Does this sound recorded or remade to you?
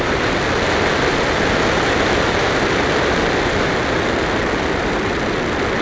recorded